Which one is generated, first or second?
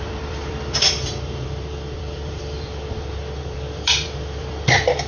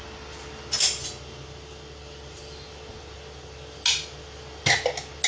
first